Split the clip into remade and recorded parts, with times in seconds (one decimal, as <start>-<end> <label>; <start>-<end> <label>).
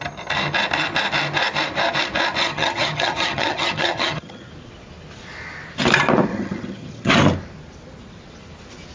0.0-2.4 recorded; 2.4-4.5 remade; 4.5-6.3 recorded; 6.3-7.1 remade; 7.1-8.9 recorded